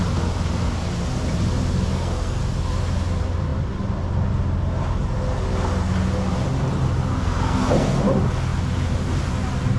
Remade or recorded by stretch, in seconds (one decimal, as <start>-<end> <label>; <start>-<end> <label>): 0.0-1.9 recorded; 1.9-2.4 remade; 2.4-7.1 recorded; 7.1-8.0 remade; 8.0-9.8 recorded